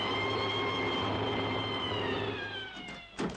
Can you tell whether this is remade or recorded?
remade